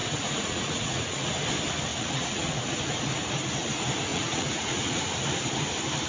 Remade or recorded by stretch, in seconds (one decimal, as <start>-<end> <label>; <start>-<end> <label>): 0.0-1.3 remade; 1.3-1.9 recorded; 1.9-2.8 remade; 2.8-4.1 recorded; 4.1-5.0 remade; 5.0-6.1 recorded